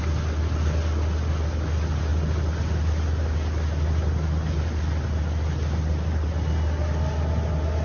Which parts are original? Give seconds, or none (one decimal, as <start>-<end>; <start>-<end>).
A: 0.0-7.8